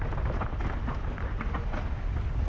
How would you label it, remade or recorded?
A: recorded